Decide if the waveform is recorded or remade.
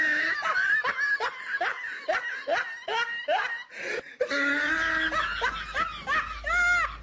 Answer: recorded